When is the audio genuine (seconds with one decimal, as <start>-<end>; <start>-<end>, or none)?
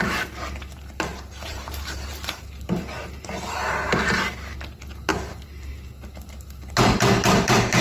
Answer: 0.0-1.1; 2.1-7.8